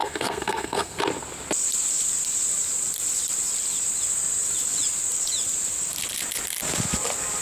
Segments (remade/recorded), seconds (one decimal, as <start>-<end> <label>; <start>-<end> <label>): 0.0-1.0 remade; 1.0-7.4 recorded